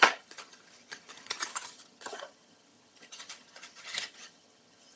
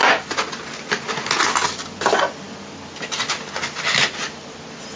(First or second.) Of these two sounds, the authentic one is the second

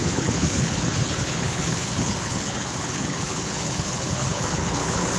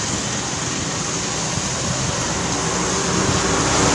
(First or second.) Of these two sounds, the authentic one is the second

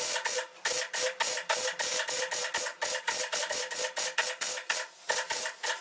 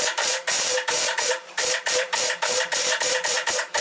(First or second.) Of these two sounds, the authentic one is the first